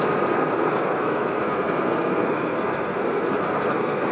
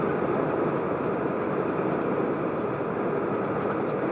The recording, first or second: second